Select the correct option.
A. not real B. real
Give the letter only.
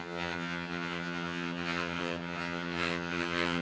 A